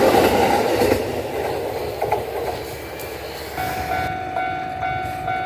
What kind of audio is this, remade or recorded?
recorded